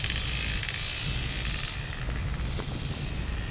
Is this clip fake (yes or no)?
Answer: no